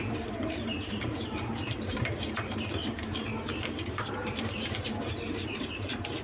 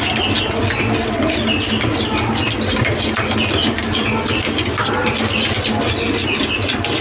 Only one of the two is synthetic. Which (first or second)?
first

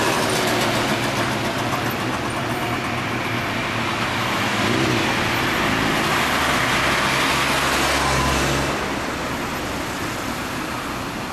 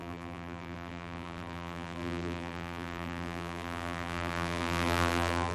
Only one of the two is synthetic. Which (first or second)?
second